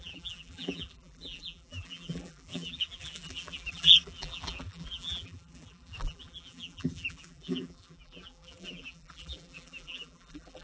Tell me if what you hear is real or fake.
fake